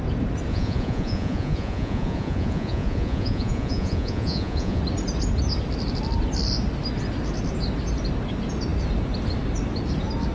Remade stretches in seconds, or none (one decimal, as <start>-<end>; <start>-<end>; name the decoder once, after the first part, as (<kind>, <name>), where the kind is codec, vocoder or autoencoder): 0.5-4.8 (vocoder, Vocos)